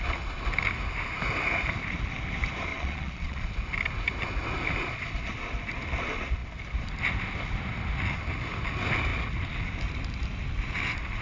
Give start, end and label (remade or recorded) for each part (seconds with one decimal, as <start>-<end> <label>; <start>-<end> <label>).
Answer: 0.0-2.7 recorded; 2.7-3.5 remade; 3.5-11.2 recorded